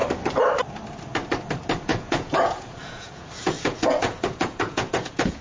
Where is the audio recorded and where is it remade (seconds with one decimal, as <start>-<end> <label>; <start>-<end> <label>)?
0.0-1.9 recorded; 1.9-5.4 remade